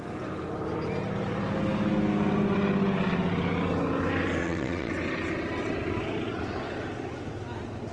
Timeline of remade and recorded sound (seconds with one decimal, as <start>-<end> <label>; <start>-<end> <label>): 0.0-4.4 recorded; 4.4-4.9 remade; 4.9-7.9 recorded